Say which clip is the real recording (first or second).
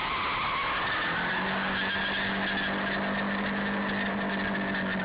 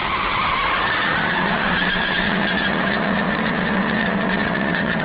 first